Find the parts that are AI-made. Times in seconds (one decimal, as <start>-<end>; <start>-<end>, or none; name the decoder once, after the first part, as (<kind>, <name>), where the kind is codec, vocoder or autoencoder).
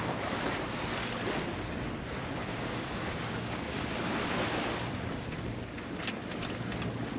2.5-3.8 (codec, DAC)